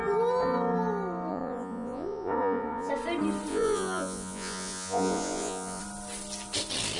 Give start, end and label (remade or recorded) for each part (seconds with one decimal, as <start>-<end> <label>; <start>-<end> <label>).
0.0-1.3 recorded; 1.3-2.9 remade; 2.9-3.5 recorded; 3.5-5.8 remade; 5.8-7.0 recorded